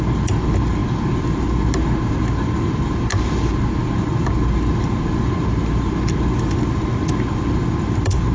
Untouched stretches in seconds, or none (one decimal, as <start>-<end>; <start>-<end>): 0.0-8.3